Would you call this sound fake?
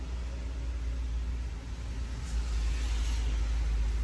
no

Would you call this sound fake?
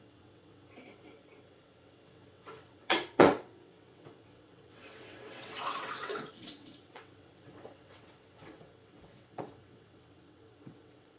yes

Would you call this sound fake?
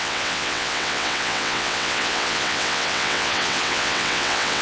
yes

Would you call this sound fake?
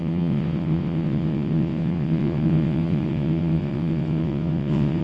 yes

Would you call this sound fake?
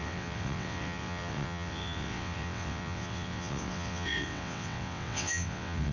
yes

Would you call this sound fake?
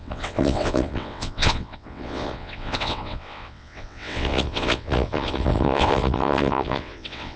yes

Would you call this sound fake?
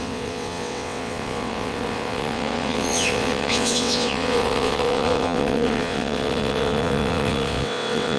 yes